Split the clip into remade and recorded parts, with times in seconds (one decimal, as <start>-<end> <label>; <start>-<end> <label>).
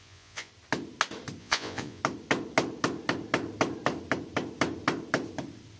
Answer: 0.0-0.5 remade; 0.5-1.4 recorded; 1.4-2.0 remade; 2.0-5.8 recorded